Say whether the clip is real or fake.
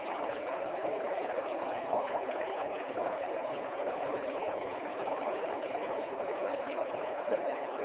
fake